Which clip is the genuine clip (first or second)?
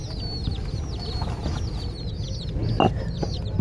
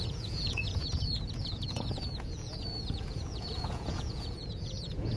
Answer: first